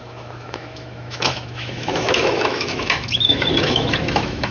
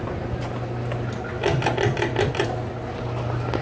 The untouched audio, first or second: second